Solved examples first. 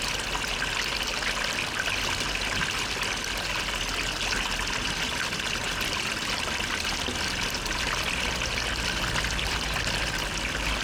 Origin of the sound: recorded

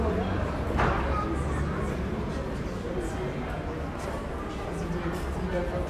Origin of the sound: recorded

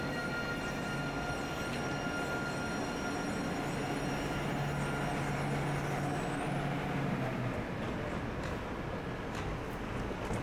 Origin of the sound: recorded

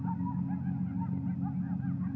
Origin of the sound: recorded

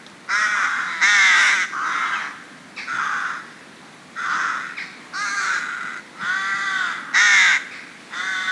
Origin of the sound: recorded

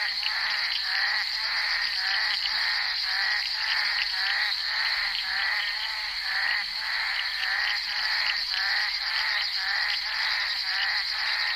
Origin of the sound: remade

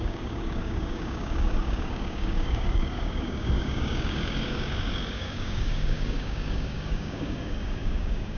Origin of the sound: remade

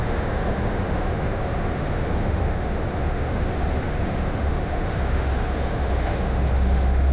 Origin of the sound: remade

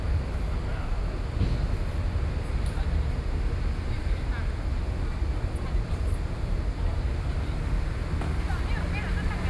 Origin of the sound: recorded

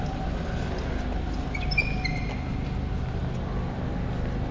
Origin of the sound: recorded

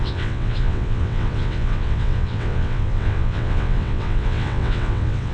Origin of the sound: remade